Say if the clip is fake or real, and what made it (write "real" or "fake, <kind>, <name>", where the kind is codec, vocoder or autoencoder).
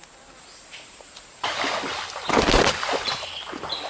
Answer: real